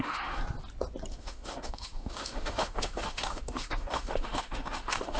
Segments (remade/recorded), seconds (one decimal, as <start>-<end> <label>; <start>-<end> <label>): 0.0-0.4 remade; 0.4-1.1 recorded; 1.1-5.2 remade